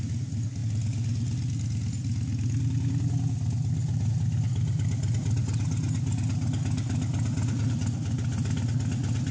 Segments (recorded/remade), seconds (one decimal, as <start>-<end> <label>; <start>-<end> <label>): 0.0-9.3 recorded